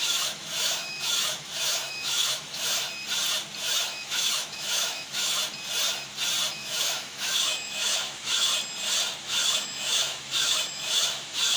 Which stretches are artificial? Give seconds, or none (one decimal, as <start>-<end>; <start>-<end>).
0.0-2.8; 3.6-5.4; 6.5-8.5; 9.2-11.6